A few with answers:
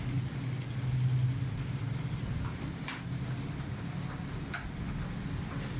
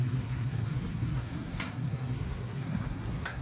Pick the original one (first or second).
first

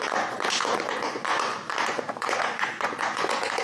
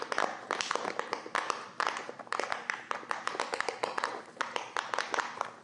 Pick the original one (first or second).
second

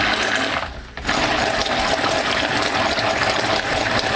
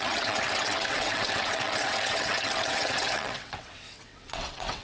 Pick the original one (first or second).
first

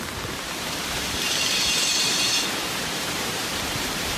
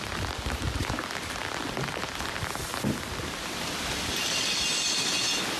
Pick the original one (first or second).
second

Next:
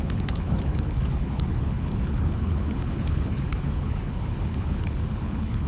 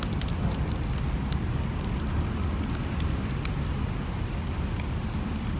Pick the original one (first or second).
second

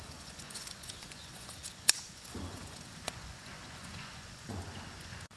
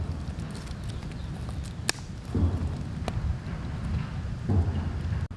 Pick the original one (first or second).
second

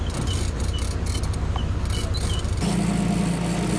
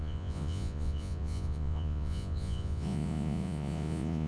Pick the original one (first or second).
first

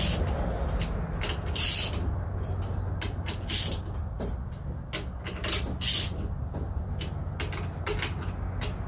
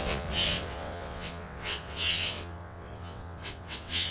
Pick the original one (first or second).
first